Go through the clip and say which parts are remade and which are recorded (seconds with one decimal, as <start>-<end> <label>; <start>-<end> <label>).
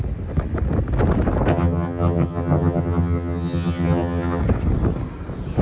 0.0-1.5 recorded; 1.5-4.4 remade; 4.4-5.6 recorded